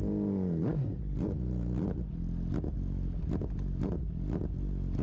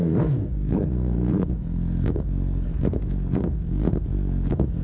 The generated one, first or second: second